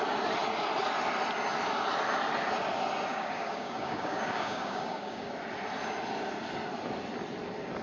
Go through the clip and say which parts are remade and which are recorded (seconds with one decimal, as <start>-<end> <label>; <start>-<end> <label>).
0.0-3.1 recorded; 3.1-5.3 remade; 5.3-7.8 recorded